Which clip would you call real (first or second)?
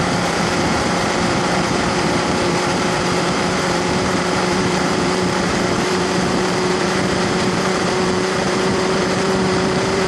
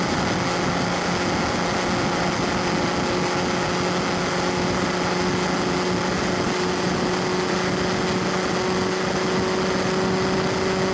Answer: second